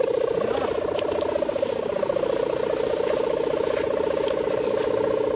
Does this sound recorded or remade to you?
recorded